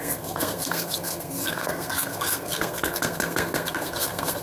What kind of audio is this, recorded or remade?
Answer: remade